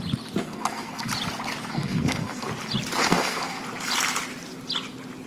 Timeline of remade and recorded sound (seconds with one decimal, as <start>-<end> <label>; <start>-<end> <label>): 0.0-0.4 recorded; 0.4-1.1 remade; 1.1-1.7 recorded; 1.7-2.5 remade; 2.5-3.0 recorded; 3.0-3.6 remade; 3.6-5.3 recorded